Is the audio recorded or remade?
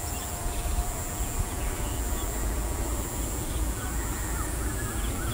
remade